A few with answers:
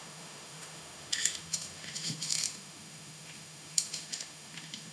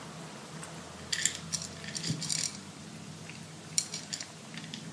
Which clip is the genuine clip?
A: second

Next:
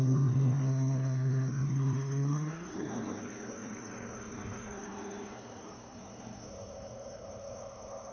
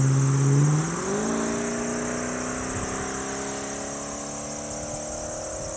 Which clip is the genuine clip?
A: second